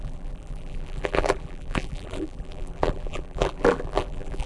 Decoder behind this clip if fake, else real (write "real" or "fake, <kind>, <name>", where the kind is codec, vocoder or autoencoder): fake, vocoder, BigVGAN v2